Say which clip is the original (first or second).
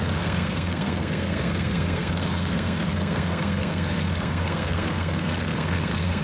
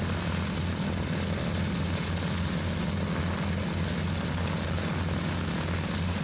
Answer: second